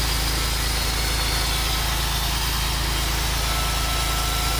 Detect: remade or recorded recorded